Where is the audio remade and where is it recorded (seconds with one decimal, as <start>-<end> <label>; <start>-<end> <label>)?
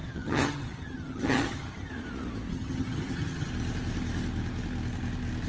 0.0-1.9 remade; 1.9-2.5 recorded; 2.5-3.5 remade; 3.5-5.5 recorded